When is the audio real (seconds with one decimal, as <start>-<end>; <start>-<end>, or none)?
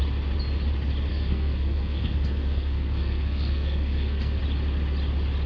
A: 0.0-1.1; 4.4-5.5